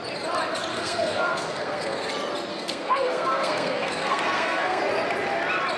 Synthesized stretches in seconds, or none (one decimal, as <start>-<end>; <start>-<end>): 0.7-2.1; 2.5-4.8